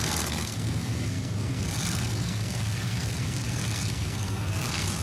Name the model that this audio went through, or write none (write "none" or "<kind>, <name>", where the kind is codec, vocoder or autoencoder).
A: codec, SNAC